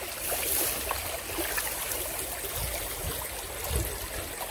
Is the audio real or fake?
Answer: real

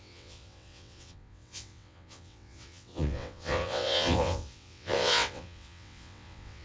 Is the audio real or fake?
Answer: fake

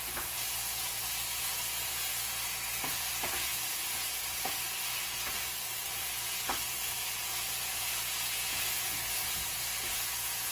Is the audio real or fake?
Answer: fake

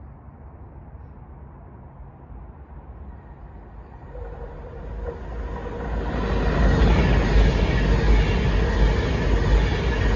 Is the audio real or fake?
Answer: real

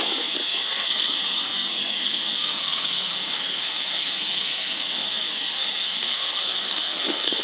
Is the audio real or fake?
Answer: fake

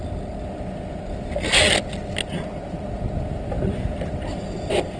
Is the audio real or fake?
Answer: real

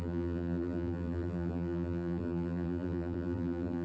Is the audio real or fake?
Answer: fake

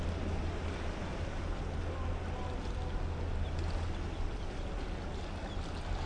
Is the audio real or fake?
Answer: real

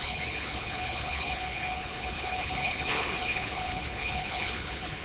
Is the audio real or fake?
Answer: fake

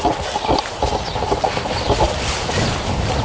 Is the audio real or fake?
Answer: real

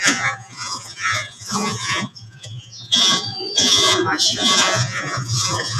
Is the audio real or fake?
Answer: fake